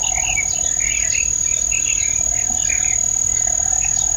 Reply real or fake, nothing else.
real